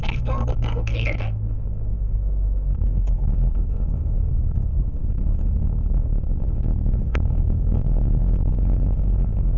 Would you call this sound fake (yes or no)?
yes